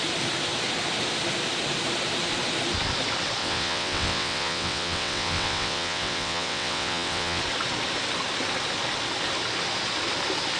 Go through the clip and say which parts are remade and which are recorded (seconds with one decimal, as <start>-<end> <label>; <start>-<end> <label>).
0.0-3.4 recorded; 3.4-7.4 remade; 7.4-10.6 recorded